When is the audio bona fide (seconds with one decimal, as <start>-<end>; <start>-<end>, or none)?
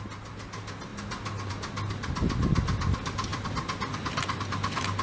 0.0-5.0